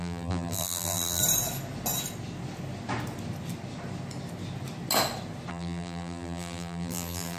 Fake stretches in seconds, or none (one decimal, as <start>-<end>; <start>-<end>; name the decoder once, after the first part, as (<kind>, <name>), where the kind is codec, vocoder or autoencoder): 0.0-1.2 (vocoder, BigVGAN v2); 5.5-7.4